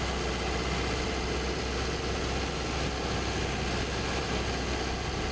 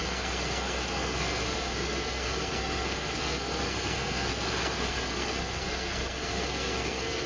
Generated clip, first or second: second